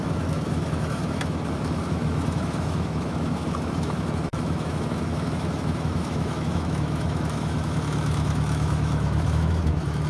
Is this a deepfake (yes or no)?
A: yes